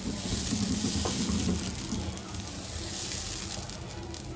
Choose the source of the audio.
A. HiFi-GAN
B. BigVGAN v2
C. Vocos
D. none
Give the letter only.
D